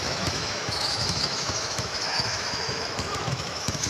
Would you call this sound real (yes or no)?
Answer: no